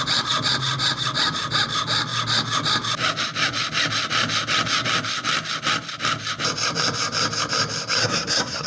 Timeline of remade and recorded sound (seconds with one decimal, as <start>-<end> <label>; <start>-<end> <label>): 0.0-8.0 recorded; 8.0-8.7 remade